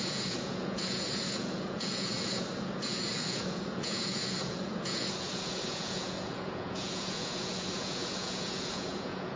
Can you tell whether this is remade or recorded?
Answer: remade